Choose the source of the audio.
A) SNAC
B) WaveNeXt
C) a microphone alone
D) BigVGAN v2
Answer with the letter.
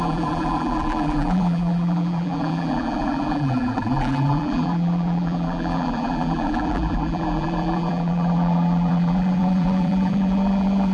D